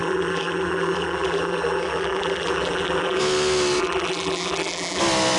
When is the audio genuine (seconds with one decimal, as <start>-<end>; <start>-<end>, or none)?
3.2-3.8; 5.0-5.4